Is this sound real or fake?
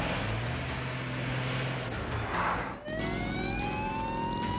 real